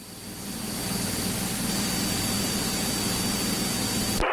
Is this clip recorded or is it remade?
recorded